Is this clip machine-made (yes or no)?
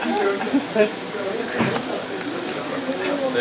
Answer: no